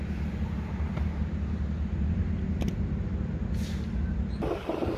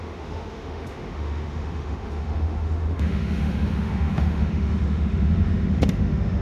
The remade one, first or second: second